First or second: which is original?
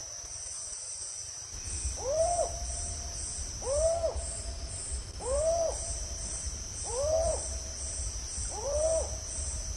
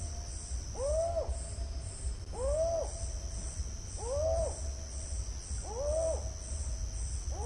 second